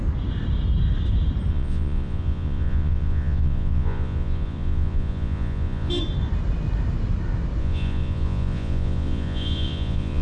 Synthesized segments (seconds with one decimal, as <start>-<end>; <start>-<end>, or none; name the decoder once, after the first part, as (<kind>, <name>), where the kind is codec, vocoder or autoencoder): 1.5-5.9 (vocoder, Vocos); 7.6-10.2